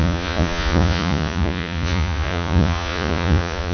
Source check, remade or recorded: remade